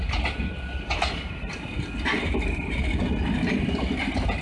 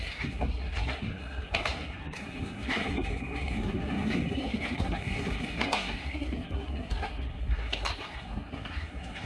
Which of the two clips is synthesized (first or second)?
second